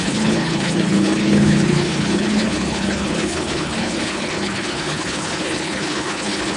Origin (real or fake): fake